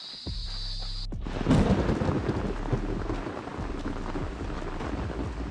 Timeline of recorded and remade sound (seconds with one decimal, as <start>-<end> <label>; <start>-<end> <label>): 0.0-5.5 recorded